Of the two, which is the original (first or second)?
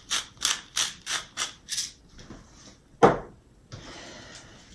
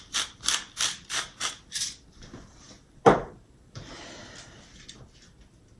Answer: first